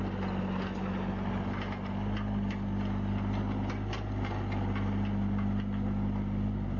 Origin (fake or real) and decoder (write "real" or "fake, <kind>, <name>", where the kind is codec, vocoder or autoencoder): real